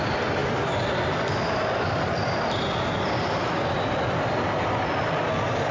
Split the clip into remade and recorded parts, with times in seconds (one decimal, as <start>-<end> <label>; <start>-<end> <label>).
0.0-5.7 recorded